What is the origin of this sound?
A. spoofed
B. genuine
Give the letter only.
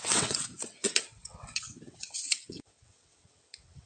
A